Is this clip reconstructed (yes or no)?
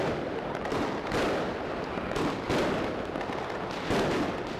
no